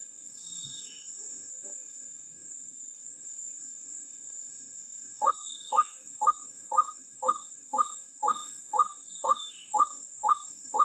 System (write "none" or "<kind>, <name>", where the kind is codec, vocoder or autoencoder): codec, DAC